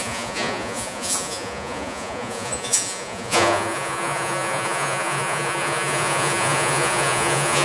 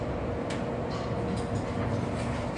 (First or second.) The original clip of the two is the second